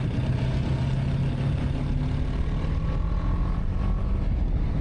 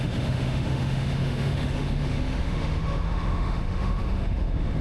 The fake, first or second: second